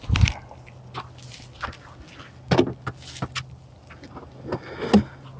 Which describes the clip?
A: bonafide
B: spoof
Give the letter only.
A